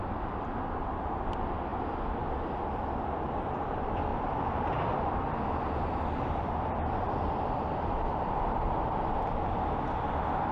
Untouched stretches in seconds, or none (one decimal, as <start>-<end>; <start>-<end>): 0.0-4.1; 5.2-10.5